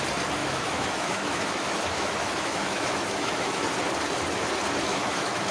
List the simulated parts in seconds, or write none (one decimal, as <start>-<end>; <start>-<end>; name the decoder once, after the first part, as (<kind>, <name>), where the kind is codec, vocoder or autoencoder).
0.4-3.6 (autoencoder, DAC-VAE); 4.9-5.5